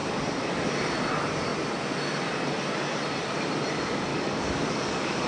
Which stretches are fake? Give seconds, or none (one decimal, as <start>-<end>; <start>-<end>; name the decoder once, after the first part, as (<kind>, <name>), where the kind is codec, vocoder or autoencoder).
4.1-5.3 (codec, DAC)